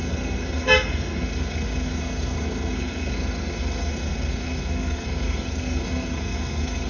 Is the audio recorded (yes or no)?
no